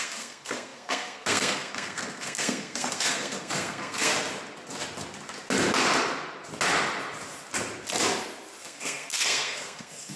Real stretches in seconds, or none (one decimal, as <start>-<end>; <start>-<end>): 4.1-8.6